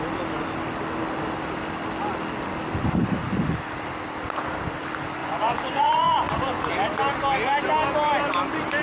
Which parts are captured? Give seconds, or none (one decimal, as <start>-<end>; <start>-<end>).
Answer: 0.0-5.2; 6.7-8.8